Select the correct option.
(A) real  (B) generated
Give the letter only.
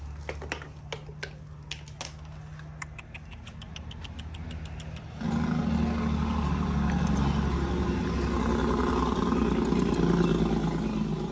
A